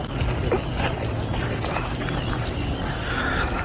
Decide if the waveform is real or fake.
real